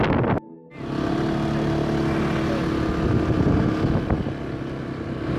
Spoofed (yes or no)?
no